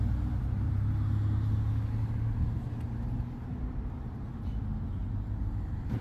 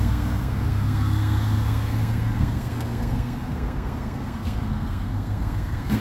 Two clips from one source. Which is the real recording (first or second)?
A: first